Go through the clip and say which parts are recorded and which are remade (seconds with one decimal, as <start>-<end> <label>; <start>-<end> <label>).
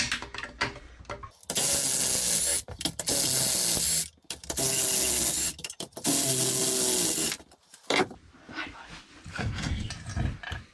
0.0-9.3 recorded; 9.3-9.9 remade; 9.9-10.7 recorded